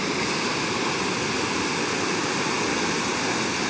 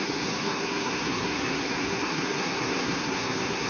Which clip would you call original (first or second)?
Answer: first